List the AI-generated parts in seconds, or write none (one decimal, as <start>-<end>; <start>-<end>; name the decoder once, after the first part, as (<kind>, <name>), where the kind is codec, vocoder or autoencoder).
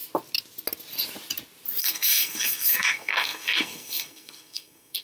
1.8-5.0 (codec, SNAC)